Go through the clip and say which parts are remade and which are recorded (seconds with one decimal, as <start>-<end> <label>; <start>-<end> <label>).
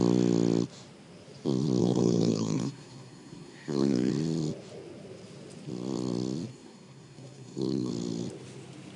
0.0-1.8 recorded; 1.8-4.1 remade; 4.1-6.5 recorded; 6.5-7.9 remade; 7.9-9.0 recorded